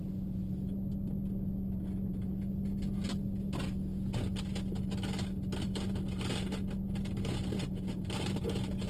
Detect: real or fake real